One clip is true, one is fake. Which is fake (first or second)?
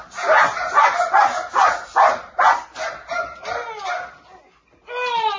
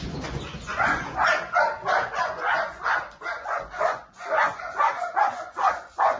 second